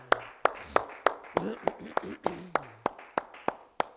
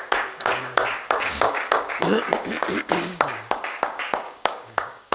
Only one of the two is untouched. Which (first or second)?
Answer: first